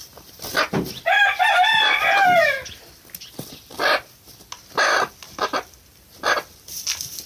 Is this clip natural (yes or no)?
yes